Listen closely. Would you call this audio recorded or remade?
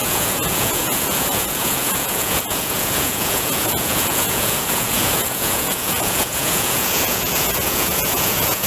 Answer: remade